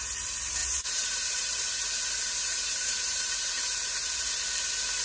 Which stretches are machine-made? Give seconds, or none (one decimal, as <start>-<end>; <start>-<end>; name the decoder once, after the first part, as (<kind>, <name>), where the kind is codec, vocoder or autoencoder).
0.6-2.0 (vocoder, BigVGAN v2); 2.4-3.6